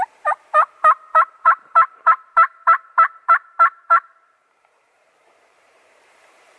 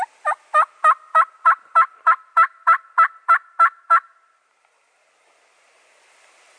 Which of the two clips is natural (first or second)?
second